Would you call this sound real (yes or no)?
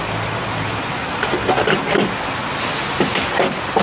yes